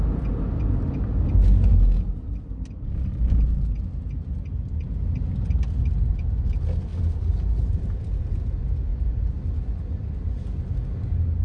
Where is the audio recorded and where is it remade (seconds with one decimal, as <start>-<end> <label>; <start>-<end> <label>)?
0.0-6.9 recorded; 6.9-7.5 remade; 7.5-11.4 recorded